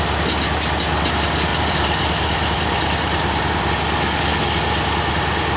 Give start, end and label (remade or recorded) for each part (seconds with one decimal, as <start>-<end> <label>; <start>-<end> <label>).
0.0-1.5 recorded; 1.5-3.7 remade; 3.7-5.6 recorded